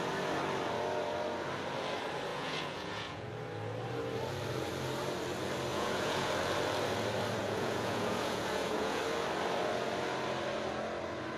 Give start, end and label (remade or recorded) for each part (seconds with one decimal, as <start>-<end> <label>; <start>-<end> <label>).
0.0-2.3 recorded; 2.3-3.3 remade; 3.3-5.7 recorded; 5.7-6.3 remade; 6.3-7.4 recorded; 7.4-9.0 remade; 9.0-11.4 recorded